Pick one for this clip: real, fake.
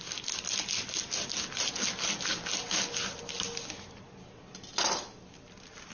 real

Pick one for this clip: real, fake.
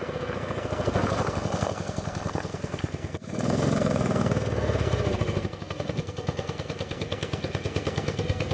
fake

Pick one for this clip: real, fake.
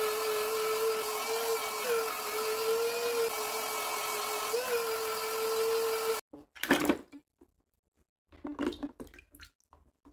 real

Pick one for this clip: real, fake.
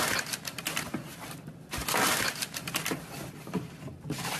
real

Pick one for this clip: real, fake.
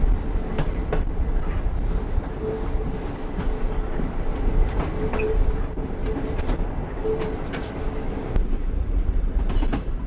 real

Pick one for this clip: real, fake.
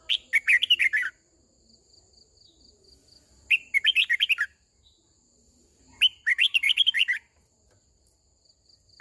real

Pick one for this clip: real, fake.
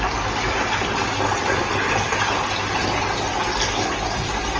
real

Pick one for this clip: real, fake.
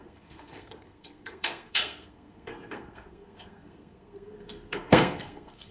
fake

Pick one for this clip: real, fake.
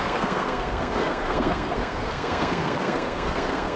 fake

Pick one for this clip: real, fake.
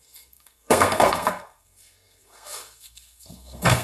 fake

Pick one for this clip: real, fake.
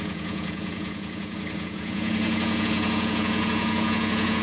fake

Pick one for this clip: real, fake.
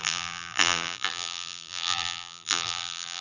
fake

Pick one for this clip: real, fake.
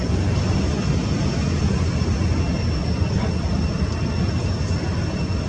real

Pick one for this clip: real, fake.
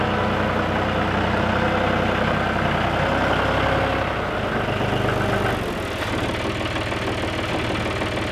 real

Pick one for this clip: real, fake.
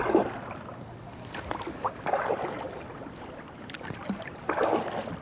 real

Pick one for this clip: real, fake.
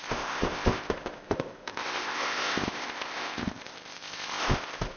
fake